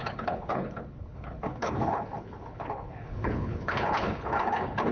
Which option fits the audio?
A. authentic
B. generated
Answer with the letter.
B